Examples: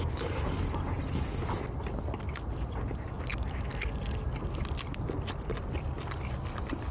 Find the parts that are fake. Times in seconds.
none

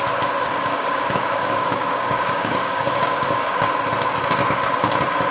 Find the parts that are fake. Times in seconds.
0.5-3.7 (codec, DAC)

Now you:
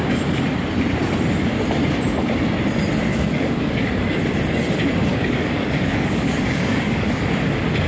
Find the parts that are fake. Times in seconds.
3.1-4.2 (codec, DAC); 5.1-7.2

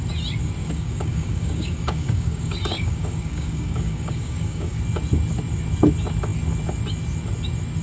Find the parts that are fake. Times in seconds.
0.6-4.8 (codec, DAC)